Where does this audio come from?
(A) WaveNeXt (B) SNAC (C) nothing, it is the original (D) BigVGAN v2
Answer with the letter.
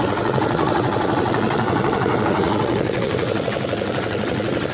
A